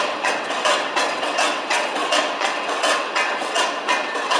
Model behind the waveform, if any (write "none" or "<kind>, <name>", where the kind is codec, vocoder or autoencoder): vocoder, WaveNeXt